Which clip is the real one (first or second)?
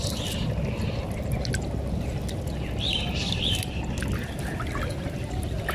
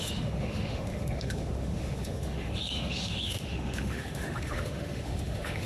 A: first